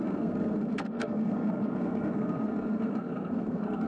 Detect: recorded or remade remade